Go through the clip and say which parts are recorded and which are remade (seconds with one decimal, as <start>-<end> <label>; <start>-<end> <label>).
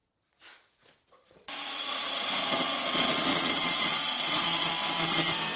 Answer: 0.0-2.1 remade; 2.1-3.3 recorded; 3.3-4.7 remade; 4.7-5.6 recorded